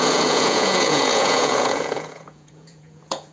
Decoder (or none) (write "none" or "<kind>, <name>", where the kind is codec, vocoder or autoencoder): vocoder, Vocos